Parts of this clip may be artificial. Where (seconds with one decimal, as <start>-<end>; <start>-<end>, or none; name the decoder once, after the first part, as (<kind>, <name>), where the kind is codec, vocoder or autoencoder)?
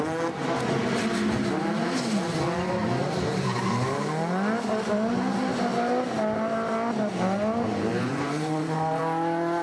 7.9-9.0 (vocoder, Vocos)